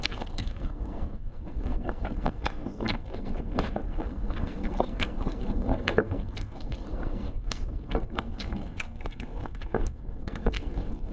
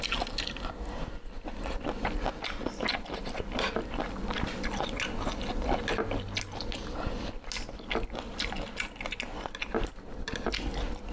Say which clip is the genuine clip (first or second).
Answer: second